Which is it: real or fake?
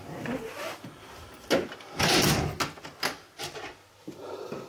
real